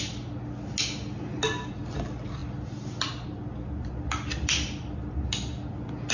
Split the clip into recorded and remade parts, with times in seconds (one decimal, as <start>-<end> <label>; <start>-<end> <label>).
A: 0.0-6.1 recorded